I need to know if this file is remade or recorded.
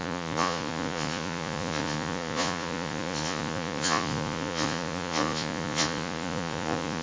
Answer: remade